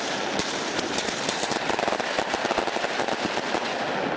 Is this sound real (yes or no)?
yes